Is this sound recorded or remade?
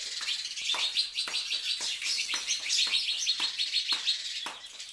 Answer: remade